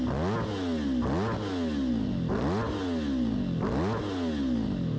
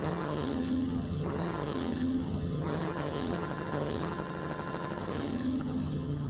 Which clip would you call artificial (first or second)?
second